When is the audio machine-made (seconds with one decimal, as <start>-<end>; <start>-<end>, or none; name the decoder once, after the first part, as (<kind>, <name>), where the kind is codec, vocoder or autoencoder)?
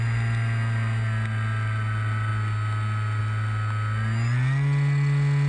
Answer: none